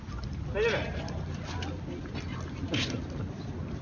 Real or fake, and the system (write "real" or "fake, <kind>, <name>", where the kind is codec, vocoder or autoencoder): real